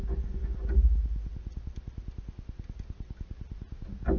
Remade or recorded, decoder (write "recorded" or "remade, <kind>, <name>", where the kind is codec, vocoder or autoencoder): recorded